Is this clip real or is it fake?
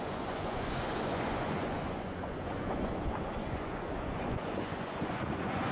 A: fake